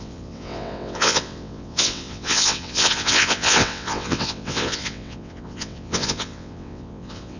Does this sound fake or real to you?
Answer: fake